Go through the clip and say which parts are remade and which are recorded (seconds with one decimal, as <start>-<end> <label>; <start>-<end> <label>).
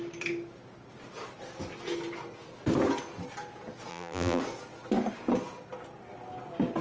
0.0-3.9 recorded; 3.9-4.4 remade; 4.4-6.8 recorded